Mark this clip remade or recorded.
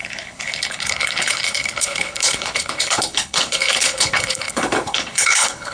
remade